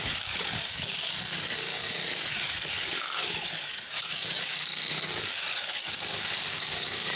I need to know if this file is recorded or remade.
remade